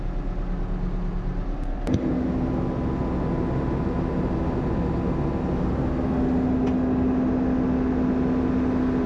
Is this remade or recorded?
recorded